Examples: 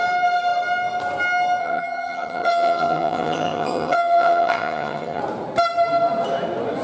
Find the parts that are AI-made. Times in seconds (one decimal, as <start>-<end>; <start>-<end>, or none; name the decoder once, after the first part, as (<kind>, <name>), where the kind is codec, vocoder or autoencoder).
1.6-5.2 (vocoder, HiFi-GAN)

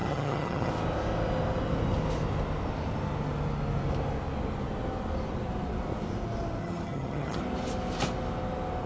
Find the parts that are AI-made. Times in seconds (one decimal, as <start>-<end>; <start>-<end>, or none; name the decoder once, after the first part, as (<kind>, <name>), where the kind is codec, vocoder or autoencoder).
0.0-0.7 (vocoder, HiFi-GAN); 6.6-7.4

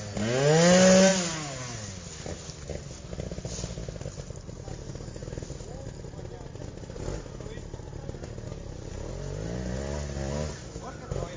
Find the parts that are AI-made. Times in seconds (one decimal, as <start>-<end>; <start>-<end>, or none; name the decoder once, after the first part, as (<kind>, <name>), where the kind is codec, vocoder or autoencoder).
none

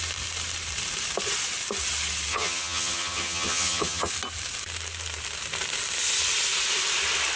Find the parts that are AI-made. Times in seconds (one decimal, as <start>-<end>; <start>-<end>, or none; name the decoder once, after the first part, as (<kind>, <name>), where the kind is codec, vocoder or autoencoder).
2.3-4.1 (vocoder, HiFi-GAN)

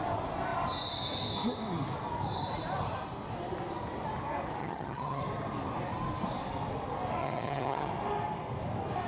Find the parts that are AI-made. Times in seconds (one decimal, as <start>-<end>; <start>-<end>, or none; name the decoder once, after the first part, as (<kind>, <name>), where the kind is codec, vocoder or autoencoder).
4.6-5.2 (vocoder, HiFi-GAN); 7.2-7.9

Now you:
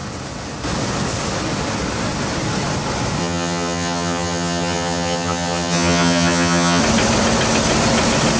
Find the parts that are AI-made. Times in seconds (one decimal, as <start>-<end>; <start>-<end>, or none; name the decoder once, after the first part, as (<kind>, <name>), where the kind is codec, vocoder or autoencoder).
3.2-6.8 (vocoder, HiFi-GAN)